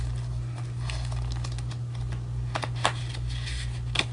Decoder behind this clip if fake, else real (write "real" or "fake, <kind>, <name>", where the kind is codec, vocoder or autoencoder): real